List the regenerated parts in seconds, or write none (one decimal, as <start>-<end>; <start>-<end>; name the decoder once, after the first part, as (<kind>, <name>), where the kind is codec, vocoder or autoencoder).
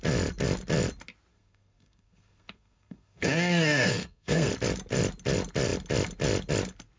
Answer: 1.3-4.5 (codec, SNAC)